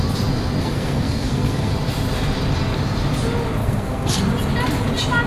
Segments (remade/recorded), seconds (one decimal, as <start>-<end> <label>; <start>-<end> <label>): 0.0-0.6 recorded; 0.6-1.7 remade; 1.7-3.6 recorded; 3.6-4.2 remade; 4.2-5.3 recorded